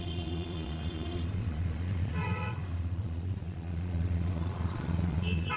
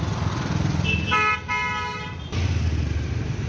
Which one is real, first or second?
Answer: second